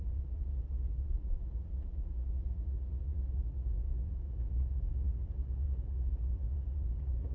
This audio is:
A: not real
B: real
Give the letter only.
A